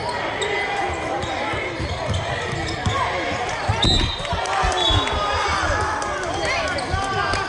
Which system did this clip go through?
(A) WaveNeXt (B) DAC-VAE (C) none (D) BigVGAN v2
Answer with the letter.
C